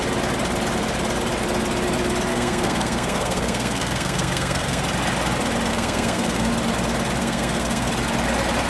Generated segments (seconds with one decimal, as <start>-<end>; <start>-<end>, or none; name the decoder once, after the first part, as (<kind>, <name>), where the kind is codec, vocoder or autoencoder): 2.3-4.8 (codec, SNAC); 5.7-6.5; 7.2-7.9